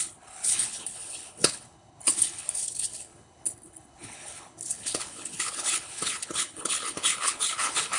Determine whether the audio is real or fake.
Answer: fake